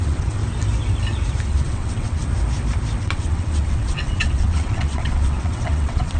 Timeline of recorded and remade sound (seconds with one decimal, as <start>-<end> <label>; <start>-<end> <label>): 0.0-0.4 remade; 0.4-1.5 recorded; 1.5-2.2 remade; 2.2-3.0 recorded; 3.0-6.2 remade